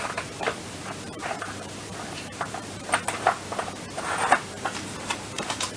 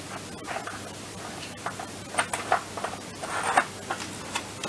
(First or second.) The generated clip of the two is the first